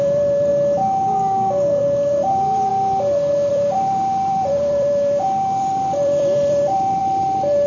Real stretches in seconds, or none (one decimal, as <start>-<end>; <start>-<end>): 0.5-1.8; 2.7-3.5